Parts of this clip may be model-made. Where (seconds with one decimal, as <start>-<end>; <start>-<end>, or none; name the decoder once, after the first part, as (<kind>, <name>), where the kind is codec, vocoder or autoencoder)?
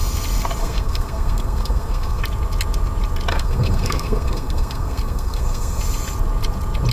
0.6-2.2 (codec, SNAC); 3.3-5.8